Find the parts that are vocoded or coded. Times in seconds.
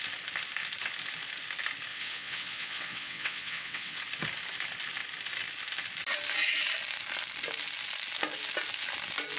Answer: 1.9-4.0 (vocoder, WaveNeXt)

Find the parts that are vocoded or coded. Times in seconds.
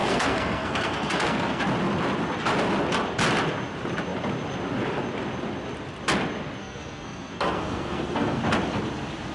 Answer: 0.0-1.6 (codec, SNAC); 6.6-8.4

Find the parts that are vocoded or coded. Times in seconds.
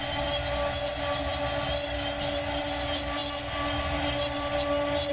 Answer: none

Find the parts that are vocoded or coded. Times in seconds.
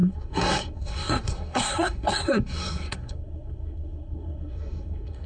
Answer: 0.0-5.3 (codec, SNAC)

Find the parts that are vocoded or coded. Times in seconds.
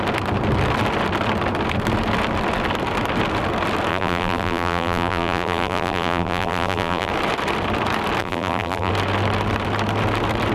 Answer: 3.9-7.1 (vocoder, BigVGAN v2); 8.2-8.9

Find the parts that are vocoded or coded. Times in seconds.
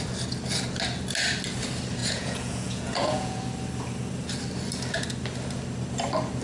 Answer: 2.0-3.4 (vocoder, Vocos)